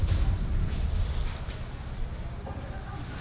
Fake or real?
real